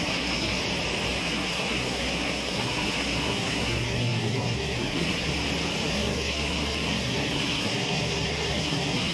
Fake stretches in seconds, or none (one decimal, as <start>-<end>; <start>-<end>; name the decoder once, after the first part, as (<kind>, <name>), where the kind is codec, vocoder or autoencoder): 0.0-0.6 (codec, SNAC); 1.2-5.3; 5.9-9.1